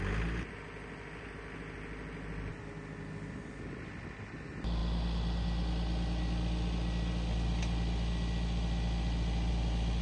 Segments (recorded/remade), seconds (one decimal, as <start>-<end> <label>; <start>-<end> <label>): 0.0-10.0 recorded